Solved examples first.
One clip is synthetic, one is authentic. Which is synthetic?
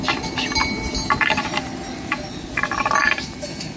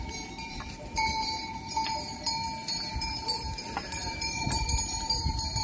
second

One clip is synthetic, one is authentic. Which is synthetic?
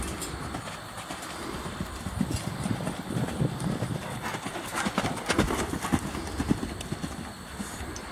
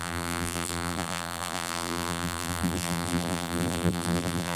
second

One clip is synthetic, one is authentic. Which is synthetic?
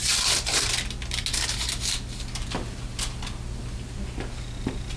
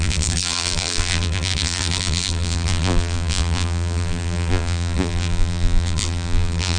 second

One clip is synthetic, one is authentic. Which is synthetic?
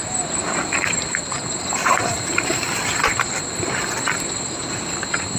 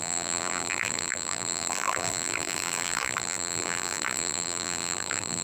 second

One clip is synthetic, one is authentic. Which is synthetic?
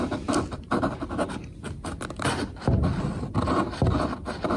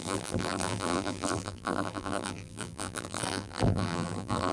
second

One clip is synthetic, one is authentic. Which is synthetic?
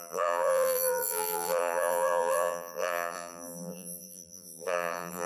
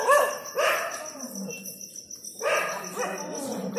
first